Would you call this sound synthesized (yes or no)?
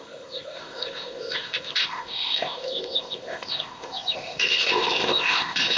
yes